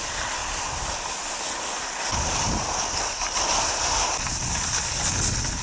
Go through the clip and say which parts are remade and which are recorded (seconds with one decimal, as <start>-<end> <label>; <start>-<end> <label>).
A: 0.0-0.4 recorded; 0.4-3.8 remade; 3.8-5.6 recorded